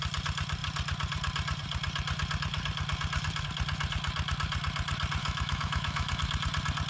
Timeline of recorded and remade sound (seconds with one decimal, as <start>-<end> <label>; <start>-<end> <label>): 0.0-5.2 recorded; 5.2-6.2 remade; 6.2-6.9 recorded